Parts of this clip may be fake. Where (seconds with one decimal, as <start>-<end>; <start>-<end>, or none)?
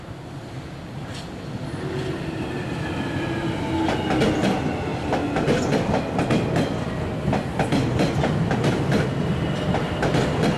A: none